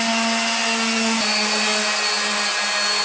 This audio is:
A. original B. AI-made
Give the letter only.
A